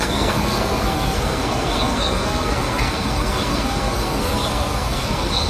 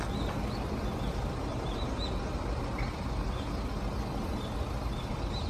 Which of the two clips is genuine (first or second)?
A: second